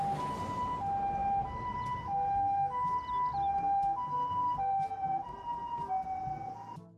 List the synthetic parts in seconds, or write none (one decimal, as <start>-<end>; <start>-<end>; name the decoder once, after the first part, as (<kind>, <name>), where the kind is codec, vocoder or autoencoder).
none